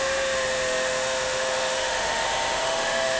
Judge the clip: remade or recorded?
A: remade